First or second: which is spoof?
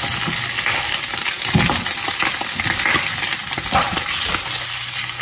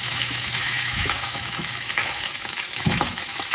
second